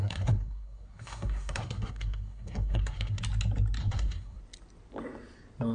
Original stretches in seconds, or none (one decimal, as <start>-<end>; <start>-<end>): 3.2-3.8; 4.4-5.7